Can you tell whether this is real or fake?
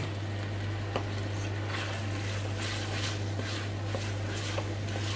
real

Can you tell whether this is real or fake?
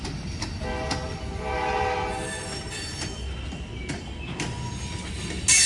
real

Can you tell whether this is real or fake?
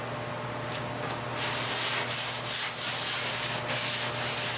real